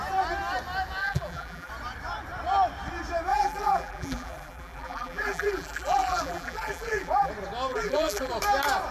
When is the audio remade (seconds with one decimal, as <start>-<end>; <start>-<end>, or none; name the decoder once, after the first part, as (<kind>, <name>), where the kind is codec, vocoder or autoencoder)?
1.0-1.7 (vocoder, BigVGAN v2); 3.3-7.3; 7.7-8.3